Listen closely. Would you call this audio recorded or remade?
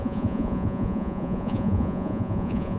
remade